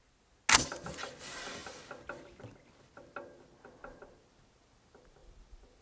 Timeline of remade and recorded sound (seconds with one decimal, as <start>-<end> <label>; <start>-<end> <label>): 0.0-5.8 recorded